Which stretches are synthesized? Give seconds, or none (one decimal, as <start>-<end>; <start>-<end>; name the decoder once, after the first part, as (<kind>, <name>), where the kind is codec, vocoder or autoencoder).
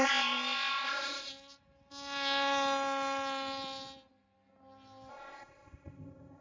0.0-1.3 (codec, ZipCodec); 5.1-6.4